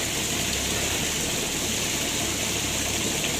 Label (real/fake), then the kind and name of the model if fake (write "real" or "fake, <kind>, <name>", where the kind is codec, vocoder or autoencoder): real